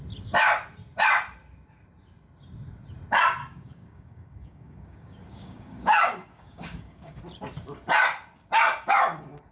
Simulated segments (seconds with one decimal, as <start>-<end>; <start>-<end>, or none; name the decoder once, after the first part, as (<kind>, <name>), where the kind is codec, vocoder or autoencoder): 3.4-7.2 (codec, DAC)